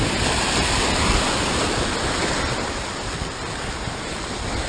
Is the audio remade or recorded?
recorded